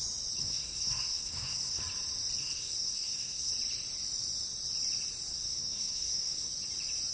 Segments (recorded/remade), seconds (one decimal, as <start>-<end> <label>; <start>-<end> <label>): 0.0-0.4 recorded; 0.4-1.8 remade; 1.8-2.4 recorded; 2.4-3.5 remade; 3.5-5.3 recorded; 5.3-6.5 remade; 6.5-7.1 recorded